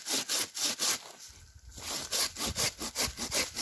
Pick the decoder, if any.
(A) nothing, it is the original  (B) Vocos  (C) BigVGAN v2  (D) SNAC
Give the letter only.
A